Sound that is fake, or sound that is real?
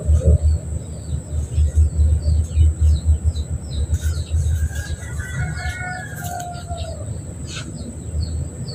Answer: real